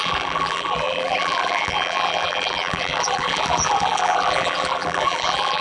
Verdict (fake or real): fake